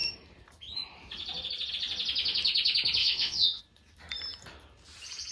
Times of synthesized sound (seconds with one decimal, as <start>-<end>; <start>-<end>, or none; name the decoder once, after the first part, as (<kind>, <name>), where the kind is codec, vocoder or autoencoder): 3.0-3.6 (vocoder, WaveNeXt)